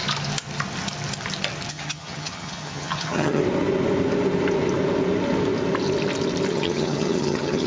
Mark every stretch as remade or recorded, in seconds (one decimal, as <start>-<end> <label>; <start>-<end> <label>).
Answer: 0.0-1.7 recorded; 1.7-3.4 remade; 3.4-6.5 recorded; 6.5-7.7 remade